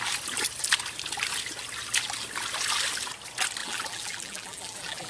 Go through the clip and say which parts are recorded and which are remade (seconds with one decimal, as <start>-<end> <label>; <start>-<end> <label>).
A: 0.0-3.6 recorded; 3.6-5.1 remade